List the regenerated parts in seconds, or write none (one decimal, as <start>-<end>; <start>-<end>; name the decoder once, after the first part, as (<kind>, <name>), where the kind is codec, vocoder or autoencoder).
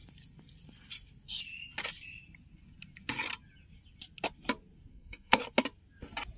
4.9-5.4 (codec, SNAC)